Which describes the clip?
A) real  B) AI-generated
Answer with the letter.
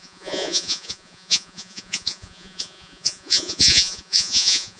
B